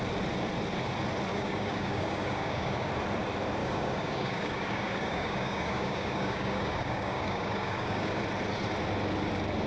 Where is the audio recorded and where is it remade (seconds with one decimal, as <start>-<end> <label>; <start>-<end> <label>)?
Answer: 0.0-1.3 recorded; 1.3-2.9 remade; 2.9-3.6 recorded; 3.6-8.2 remade; 8.2-9.7 recorded